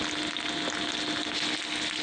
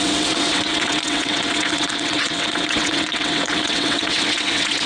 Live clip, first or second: first